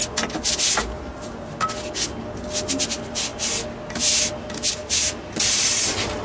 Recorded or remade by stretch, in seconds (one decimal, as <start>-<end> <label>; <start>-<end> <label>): 0.0-6.2 recorded